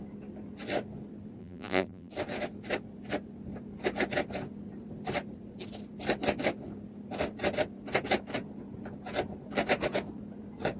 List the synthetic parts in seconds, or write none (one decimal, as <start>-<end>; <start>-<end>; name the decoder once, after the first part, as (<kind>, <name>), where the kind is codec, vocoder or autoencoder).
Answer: 1.4-2.1 (vocoder, BigVGAN v2)

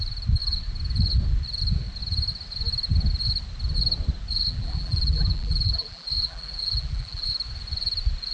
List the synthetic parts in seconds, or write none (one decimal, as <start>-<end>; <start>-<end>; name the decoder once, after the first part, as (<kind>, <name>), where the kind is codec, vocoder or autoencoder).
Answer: 4.5-7.3 (vocoder, BigVGAN v2)